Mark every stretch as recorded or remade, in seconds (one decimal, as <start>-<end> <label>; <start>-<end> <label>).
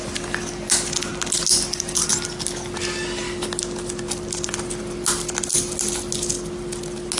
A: 0.0-7.2 recorded